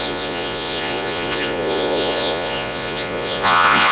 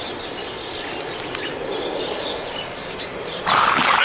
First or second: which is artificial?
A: first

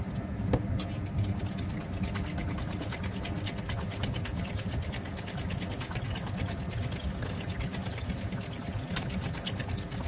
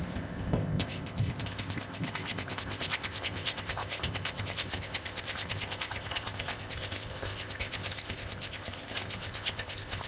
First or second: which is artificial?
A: second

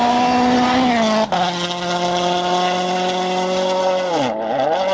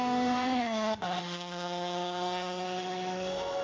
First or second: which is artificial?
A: second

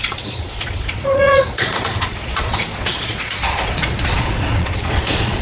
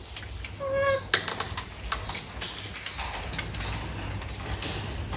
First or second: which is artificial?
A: first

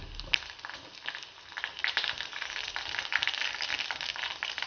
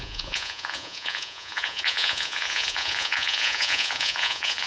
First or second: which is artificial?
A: second